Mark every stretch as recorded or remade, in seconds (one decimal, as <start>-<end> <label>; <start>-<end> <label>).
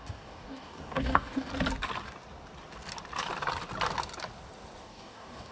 0.0-1.5 remade; 1.5-4.8 recorded; 4.8-5.5 remade